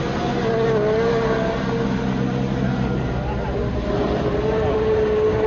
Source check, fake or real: real